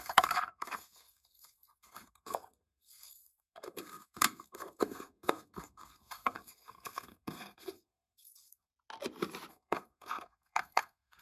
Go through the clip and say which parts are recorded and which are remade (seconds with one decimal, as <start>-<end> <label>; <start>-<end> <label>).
0.0-8.7 remade; 8.7-9.5 recorded; 9.5-11.2 remade

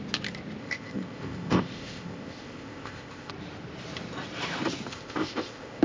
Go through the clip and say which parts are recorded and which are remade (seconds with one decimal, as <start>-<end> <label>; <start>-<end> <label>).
0.0-0.6 recorded; 0.6-3.3 remade; 3.3-4.9 recorded; 4.9-5.8 remade

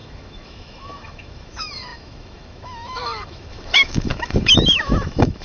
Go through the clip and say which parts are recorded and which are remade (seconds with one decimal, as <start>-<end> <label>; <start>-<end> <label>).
0.0-5.4 remade